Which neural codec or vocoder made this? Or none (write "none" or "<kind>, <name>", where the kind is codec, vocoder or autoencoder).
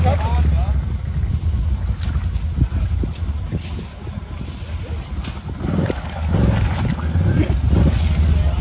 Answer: none